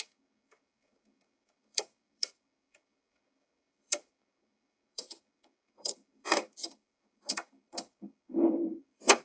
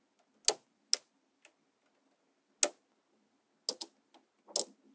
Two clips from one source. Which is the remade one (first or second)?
first